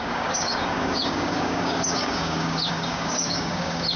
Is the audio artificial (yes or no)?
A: yes